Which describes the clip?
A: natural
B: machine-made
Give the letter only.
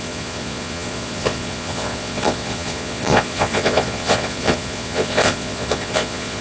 B